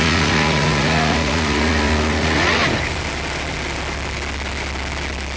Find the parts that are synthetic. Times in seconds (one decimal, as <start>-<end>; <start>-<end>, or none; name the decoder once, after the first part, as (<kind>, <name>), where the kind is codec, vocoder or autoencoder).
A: 0.0-2.6 (vocoder, Vocos)